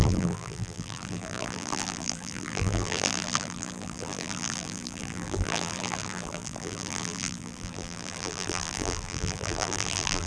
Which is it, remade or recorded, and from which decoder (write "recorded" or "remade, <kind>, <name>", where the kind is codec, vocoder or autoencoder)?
remade, vocoder, BigVGAN v2